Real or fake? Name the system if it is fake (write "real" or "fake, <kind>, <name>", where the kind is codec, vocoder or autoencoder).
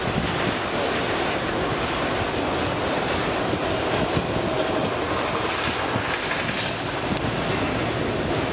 real